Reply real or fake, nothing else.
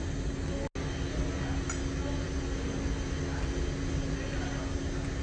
real